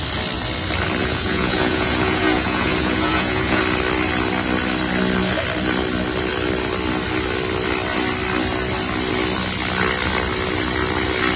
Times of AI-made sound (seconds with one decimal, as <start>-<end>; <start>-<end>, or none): 1.0-3.6